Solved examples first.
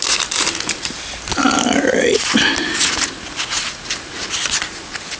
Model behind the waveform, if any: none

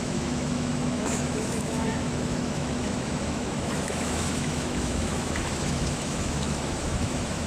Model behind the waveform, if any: autoencoder, DAC-VAE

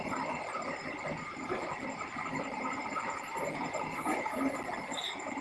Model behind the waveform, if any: none